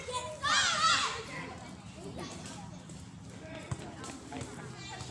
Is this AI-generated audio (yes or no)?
no